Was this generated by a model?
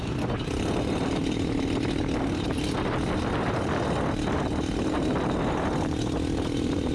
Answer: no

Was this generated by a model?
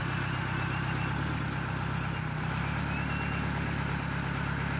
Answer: no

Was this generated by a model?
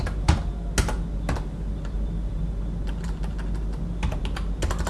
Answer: no